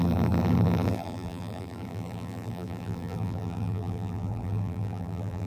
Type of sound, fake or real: fake